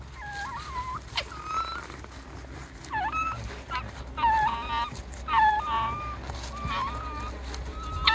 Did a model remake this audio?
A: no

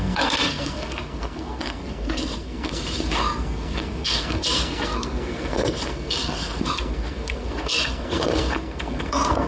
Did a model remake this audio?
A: yes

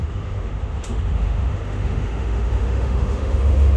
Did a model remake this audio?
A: yes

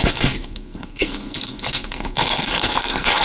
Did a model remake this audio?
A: yes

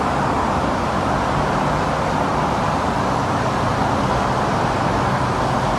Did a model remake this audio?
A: no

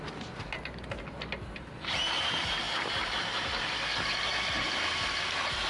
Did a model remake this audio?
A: no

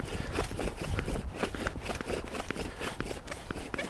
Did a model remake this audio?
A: no